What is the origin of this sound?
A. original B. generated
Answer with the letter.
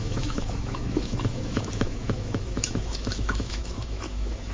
B